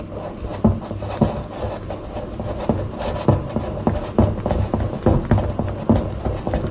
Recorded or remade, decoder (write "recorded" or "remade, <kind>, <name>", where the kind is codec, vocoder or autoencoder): recorded